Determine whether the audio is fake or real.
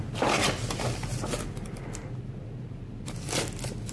real